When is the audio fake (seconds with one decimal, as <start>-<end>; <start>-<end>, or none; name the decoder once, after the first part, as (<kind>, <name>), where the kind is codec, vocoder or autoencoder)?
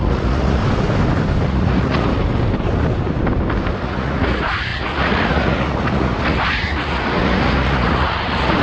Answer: 0.0-0.6 (vocoder, Vocos); 1.4-2.1; 3.8-8.6